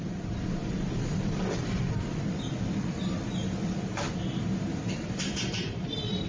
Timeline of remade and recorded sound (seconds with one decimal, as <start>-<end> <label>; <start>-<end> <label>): 0.0-6.3 remade